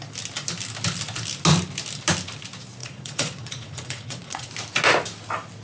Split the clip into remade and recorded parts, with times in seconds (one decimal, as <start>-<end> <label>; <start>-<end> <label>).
0.0-2.8 recorded; 2.8-4.5 remade; 4.5-5.6 recorded